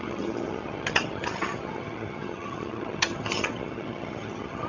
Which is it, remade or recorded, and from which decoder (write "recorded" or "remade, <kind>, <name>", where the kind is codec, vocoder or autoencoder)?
remade, vocoder, HiFi-GAN